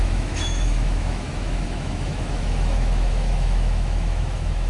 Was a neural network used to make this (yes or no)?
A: yes